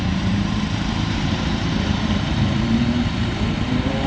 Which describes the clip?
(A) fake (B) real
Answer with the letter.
A